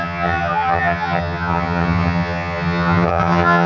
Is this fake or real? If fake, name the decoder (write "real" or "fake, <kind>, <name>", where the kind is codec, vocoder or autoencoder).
fake, vocoder, HiFi-GAN